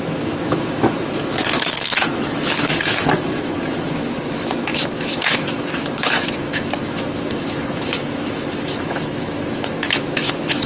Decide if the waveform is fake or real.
fake